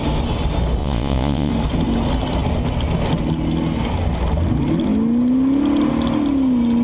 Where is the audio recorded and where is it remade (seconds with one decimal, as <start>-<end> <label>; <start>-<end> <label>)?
0.0-0.8 recorded; 0.8-1.5 remade; 1.5-6.8 recorded